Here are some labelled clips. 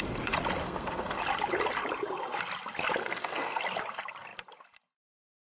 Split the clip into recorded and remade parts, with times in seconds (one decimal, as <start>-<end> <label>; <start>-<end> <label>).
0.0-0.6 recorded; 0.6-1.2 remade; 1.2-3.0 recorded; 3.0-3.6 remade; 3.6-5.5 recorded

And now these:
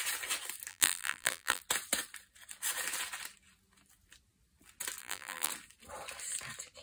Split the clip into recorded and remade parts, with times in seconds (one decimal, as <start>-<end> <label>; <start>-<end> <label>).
0.0-0.7 recorded; 0.7-1.6 remade; 1.6-5.0 recorded; 5.0-5.5 remade; 5.5-6.8 recorded

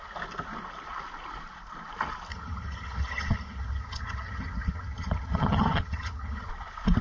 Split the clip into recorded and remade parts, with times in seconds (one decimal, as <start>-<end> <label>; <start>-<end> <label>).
0.0-2.3 recorded; 2.3-6.5 remade; 6.5-7.0 recorded

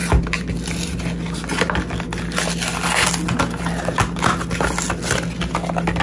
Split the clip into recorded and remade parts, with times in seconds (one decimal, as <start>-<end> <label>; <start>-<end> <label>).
0.0-6.0 recorded

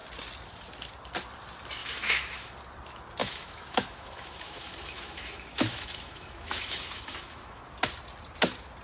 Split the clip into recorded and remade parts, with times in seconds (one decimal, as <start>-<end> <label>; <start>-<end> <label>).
0.0-1.8 recorded; 1.8-2.5 remade; 2.5-3.2 recorded; 3.2-7.6 remade; 7.6-8.8 recorded